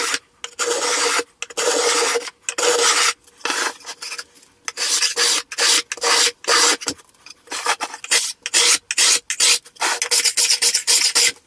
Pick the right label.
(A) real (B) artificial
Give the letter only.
A